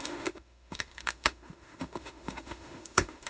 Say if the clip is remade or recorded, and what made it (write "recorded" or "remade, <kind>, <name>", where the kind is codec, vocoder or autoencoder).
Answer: remade, autoencoder, DAC-VAE